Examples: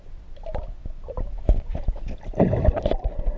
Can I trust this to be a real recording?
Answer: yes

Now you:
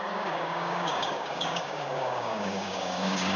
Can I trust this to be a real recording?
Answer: no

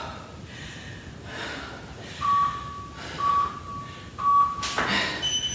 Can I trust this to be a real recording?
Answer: yes